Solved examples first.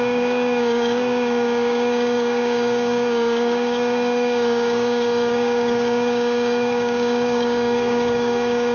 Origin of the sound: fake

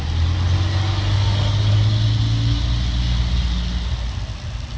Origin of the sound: real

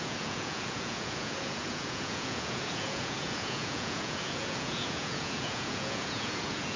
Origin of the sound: fake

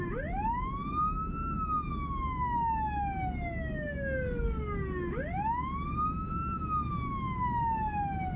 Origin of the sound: real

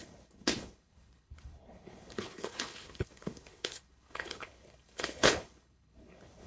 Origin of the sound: fake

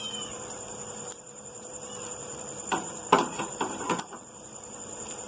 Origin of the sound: fake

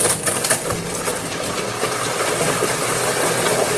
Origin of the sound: real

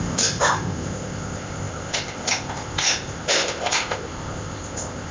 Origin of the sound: fake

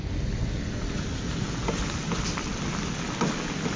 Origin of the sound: real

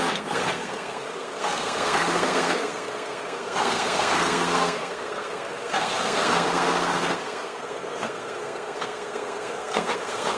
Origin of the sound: fake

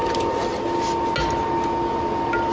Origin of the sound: real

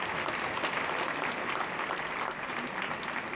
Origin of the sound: real